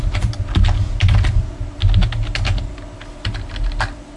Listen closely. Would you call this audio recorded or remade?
recorded